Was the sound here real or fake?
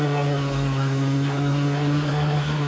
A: fake